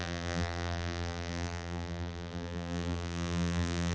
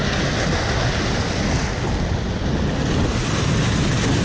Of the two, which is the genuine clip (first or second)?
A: second